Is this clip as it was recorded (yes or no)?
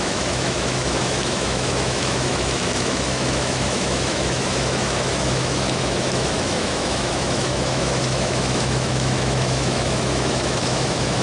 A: no